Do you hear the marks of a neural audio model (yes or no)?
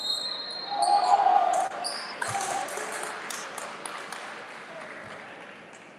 no